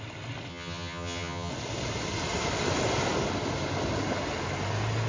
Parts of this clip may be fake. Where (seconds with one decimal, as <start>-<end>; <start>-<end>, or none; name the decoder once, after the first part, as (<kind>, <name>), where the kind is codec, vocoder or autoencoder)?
0.5-1.5 (vocoder, HiFi-GAN)